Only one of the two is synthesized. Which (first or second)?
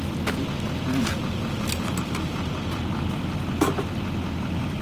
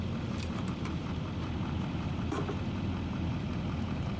second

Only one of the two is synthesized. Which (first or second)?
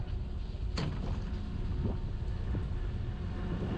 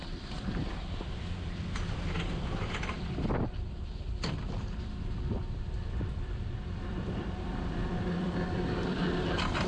second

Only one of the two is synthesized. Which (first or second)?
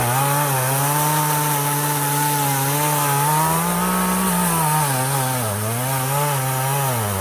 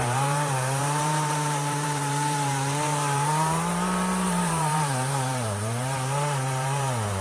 second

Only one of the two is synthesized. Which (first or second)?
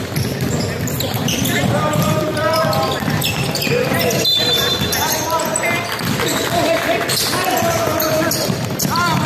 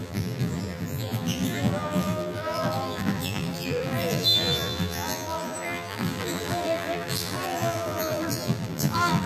second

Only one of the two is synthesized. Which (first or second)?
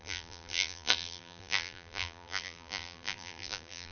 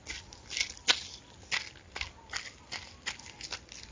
first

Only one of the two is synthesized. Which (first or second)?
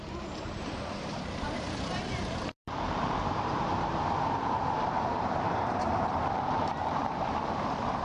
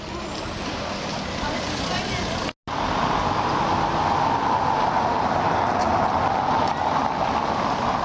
first